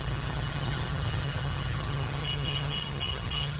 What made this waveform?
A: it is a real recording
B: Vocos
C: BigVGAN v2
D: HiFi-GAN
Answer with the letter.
D